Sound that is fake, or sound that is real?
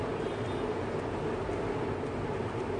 real